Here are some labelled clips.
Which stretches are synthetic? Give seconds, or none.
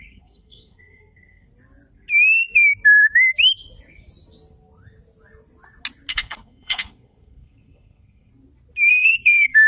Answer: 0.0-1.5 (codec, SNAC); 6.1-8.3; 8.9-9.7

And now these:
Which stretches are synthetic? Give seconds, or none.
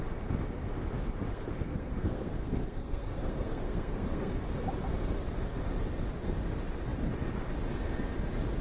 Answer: 1.3-4.3 (codec, SNAC)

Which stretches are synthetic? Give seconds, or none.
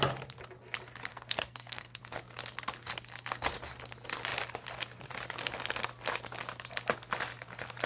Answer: 1.1-2.0 (codec, SNAC)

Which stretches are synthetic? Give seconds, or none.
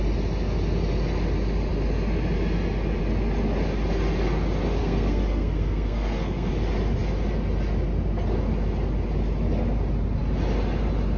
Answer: 4.8-6.5 (codec, SNAC)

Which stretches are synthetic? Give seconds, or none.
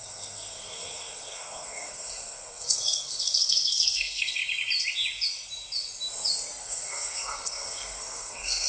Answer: 0.0-4.4 (codec, SNAC); 6.6-8.7